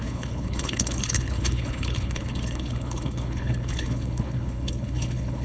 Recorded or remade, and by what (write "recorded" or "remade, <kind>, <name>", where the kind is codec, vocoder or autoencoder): remade, codec, HILCodec